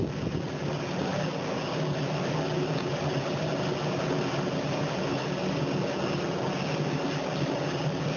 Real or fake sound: real